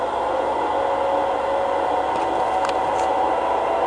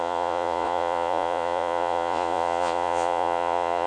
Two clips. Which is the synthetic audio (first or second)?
second